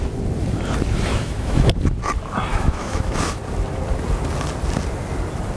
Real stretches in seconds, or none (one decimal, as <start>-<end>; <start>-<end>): 0.0-1.1; 1.7-2.5; 3.4-5.6